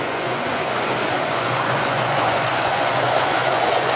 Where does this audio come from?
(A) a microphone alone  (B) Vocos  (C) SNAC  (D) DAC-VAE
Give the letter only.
B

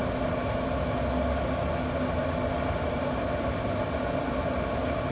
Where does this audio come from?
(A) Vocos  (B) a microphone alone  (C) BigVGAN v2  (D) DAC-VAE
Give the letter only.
B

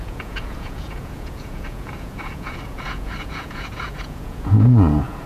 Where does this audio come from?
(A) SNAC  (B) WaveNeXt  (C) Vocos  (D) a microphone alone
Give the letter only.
C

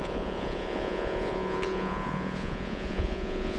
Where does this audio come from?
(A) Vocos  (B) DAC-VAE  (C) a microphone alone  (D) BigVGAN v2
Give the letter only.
A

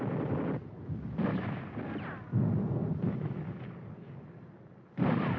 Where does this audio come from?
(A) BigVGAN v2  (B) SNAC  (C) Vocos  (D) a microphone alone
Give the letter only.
D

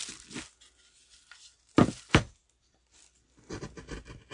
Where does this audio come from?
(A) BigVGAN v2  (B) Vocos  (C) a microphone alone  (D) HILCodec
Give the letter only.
C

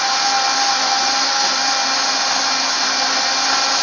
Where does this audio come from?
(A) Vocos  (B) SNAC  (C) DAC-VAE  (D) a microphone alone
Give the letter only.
D